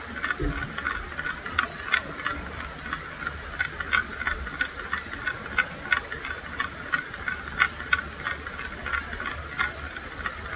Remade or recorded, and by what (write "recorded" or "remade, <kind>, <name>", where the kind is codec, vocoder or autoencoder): recorded